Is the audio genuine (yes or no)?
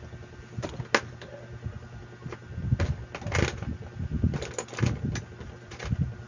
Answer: yes